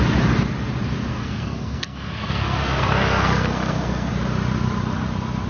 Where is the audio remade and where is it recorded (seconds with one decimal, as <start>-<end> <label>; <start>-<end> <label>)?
0.0-1.1 recorded; 1.1-4.1 remade; 4.1-5.5 recorded